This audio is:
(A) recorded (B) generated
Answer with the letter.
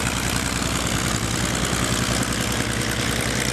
A